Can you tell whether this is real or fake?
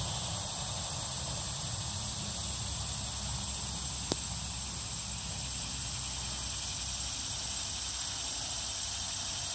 real